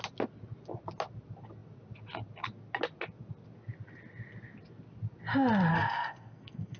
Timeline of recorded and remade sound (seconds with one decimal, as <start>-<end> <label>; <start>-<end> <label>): 0.0-5.7 recorded; 5.7-6.8 remade